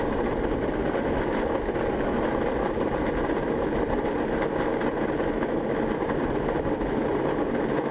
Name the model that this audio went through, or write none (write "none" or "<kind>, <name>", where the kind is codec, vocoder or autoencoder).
none